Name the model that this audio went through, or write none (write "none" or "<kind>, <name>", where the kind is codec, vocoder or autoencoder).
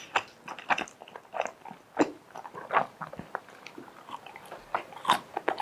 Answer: none